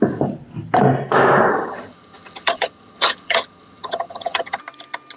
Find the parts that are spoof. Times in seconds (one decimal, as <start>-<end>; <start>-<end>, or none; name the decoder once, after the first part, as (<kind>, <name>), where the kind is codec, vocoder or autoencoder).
1.5-4.6 (vocoder, HiFi-GAN)